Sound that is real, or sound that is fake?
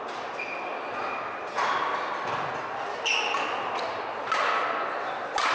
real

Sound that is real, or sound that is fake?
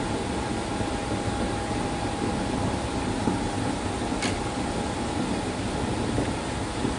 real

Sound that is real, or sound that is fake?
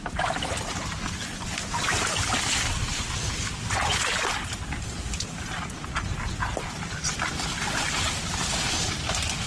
real